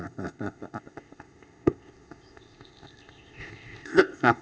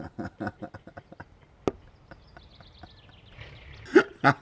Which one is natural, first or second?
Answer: second